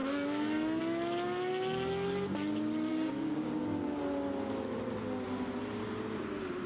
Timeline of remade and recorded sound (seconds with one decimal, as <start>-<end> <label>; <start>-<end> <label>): 0.0-0.8 remade; 0.8-2.9 recorded; 2.9-4.0 remade; 4.0-6.7 recorded